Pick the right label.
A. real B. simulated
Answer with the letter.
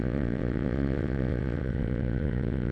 B